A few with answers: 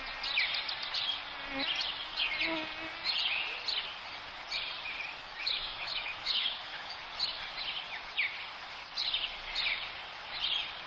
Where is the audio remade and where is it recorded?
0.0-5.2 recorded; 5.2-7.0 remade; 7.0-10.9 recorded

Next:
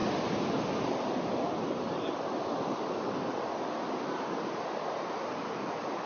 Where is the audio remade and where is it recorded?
0.0-6.1 recorded